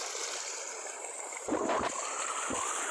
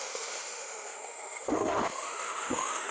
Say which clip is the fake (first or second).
second